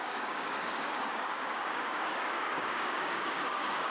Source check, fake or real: fake